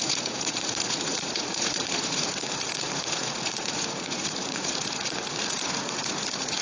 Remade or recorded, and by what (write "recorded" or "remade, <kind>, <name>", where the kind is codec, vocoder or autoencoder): remade, vocoder, Vocos